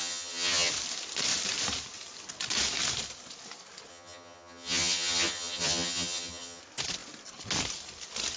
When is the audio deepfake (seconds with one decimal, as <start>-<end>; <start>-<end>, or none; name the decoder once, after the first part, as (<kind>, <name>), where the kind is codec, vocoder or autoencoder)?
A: 0.0-0.7 (vocoder, HiFi-GAN); 3.9-6.6